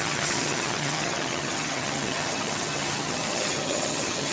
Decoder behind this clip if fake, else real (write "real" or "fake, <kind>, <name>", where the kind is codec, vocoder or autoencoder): fake, vocoder, HiFi-GAN